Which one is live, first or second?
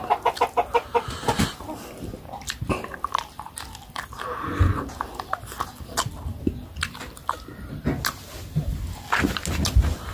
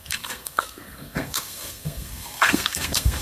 first